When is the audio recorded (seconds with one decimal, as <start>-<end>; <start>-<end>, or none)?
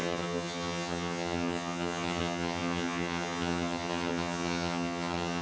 none